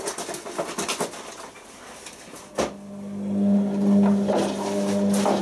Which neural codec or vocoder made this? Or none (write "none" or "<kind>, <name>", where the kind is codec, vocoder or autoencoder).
none